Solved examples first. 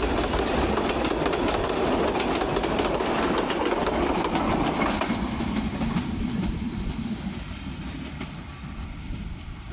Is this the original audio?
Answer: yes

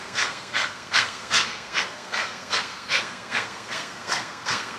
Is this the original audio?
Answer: no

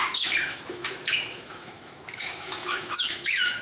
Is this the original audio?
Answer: no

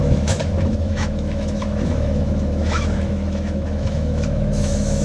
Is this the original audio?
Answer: no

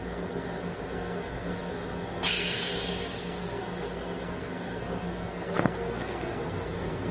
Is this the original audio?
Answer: no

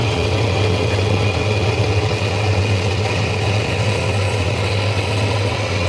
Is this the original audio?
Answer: no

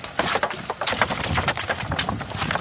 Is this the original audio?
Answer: yes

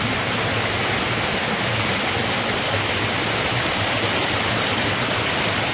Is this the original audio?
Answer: yes